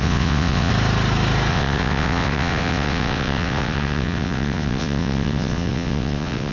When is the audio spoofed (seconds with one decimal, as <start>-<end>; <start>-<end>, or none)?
0.0-0.7; 1.5-6.5